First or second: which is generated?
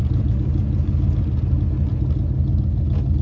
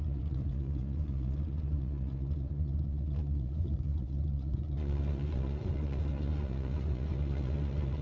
second